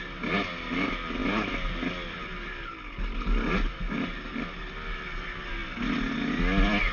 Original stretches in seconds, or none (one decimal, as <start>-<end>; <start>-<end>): 0.0-6.9